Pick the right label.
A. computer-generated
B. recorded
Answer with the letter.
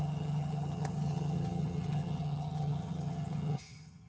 A